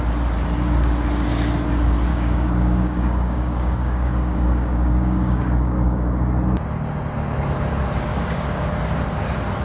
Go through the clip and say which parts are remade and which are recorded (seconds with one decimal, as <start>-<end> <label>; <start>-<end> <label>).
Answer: 0.0-2.1 recorded; 2.1-6.1 remade; 6.1-8.1 recorded; 8.1-8.7 remade; 8.7-9.6 recorded